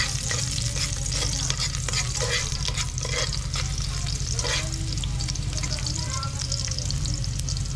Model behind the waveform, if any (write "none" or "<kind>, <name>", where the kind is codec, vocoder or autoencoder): none